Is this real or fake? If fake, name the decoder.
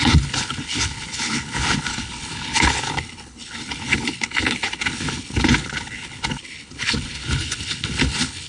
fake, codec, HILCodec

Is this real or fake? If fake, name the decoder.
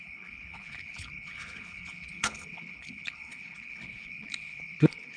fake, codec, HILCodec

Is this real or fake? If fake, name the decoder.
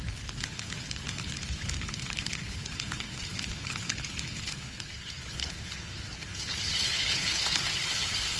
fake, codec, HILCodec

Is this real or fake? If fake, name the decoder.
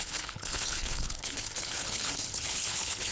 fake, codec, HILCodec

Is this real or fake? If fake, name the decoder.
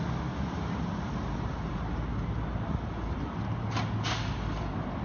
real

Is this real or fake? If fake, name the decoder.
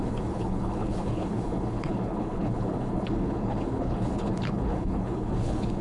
fake, codec, HILCodec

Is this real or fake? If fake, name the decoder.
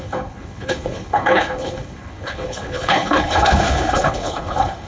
fake, codec, HILCodec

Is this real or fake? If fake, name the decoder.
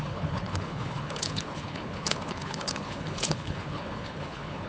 fake, codec, HILCodec